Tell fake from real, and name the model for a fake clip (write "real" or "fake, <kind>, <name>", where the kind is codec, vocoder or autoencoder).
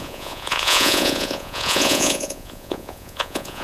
fake, vocoder, Vocos